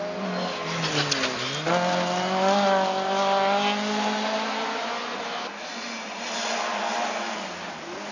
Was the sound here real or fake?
real